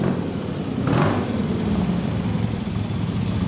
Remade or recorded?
recorded